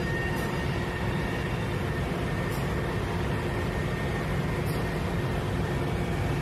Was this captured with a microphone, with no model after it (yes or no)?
yes